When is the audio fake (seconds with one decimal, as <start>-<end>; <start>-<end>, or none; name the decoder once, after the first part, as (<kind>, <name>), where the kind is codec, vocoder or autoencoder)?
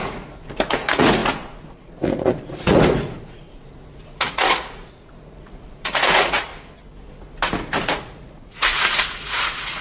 0.0-6.5 (vocoder, Vocos); 7.8-9.8